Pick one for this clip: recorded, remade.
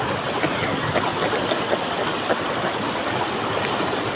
recorded